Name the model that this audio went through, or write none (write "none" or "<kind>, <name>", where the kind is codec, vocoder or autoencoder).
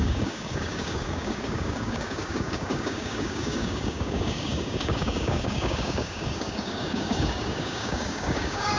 codec, DAC